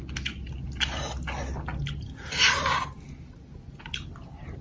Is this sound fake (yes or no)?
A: no